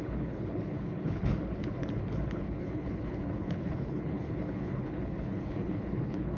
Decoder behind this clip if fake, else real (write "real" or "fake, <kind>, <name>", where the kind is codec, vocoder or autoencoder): fake, codec, HILCodec